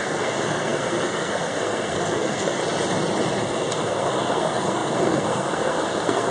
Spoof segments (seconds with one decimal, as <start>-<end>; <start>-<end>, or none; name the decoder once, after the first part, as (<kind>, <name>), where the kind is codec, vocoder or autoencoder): 0.0-2.6 (codec, SNAC); 3.4-6.3